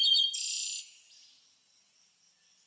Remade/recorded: recorded